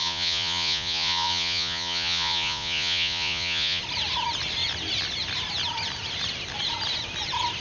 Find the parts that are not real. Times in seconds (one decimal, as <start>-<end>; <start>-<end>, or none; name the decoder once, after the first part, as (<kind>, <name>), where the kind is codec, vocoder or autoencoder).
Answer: 0.0-3.8 (vocoder, Vocos)